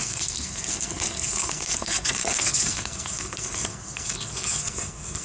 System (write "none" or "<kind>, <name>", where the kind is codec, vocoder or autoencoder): codec, SNAC